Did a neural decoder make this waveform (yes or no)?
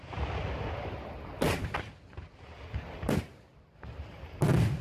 no